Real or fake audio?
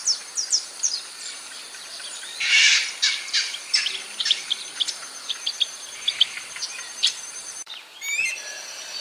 fake